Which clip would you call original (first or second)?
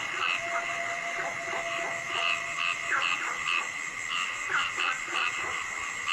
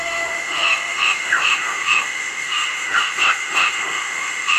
first